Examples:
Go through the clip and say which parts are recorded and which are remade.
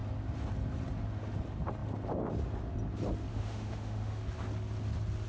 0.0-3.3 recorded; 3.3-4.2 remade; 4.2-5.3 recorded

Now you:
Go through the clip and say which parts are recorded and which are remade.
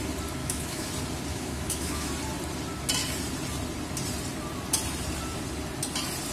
0.0-0.4 recorded; 0.4-0.9 remade; 0.9-1.3 recorded; 1.3-2.1 remade; 2.1-6.3 recorded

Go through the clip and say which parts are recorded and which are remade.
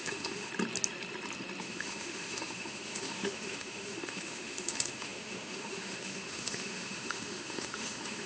0.0-0.5 remade; 0.5-1.6 recorded; 1.6-8.3 remade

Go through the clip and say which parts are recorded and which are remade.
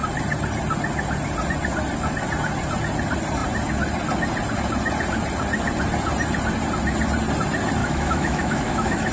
0.0-7.8 recorded; 7.8-9.1 remade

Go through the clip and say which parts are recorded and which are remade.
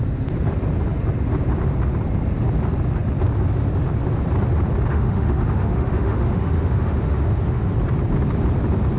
0.0-4.9 recorded; 4.9-7.7 remade; 7.7-9.0 recorded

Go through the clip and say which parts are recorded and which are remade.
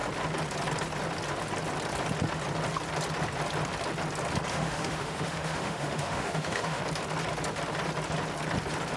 0.0-4.5 recorded; 4.5-6.8 remade; 6.8-9.0 recorded